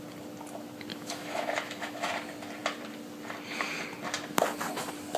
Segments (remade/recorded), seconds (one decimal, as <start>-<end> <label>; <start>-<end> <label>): 0.0-0.9 recorded; 0.9-2.1 remade; 2.1-5.2 recorded